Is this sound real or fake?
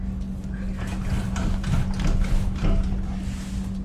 real